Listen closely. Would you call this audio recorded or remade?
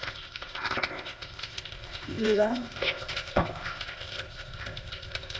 remade